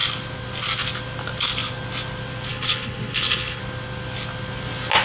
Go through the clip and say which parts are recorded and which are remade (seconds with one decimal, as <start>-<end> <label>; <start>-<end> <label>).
0.0-2.5 recorded; 2.5-3.6 remade; 3.6-5.0 recorded